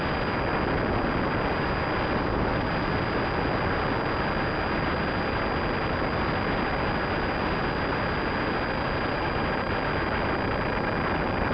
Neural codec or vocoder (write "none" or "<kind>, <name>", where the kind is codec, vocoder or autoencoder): none